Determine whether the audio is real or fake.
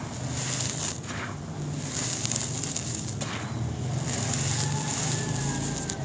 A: real